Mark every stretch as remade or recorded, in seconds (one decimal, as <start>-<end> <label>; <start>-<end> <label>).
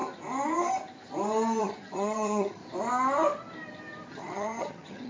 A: 0.0-1.6 recorded; 1.6-2.6 remade; 2.6-4.1 recorded; 4.1-5.1 remade